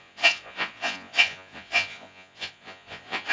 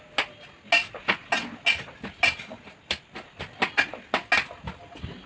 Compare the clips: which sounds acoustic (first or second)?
second